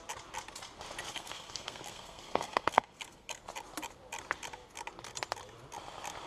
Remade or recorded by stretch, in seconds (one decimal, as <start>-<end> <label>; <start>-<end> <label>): 0.0-1.1 recorded; 1.1-3.4 remade; 3.4-6.3 recorded